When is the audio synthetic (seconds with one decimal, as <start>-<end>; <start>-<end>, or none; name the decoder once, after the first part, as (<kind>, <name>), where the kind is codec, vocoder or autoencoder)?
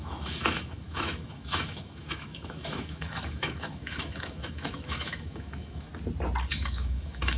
0.0-5.9 (autoencoder, DAC-VAE); 6.5-7.4